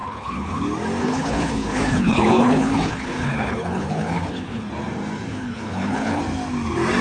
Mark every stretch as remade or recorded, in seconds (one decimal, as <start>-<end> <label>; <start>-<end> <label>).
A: 0.0-0.6 remade; 0.6-1.0 recorded; 1.0-4.7 remade; 4.7-5.3 recorded; 5.3-6.2 remade; 6.2-7.0 recorded